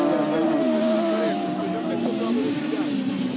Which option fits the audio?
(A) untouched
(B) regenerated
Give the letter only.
A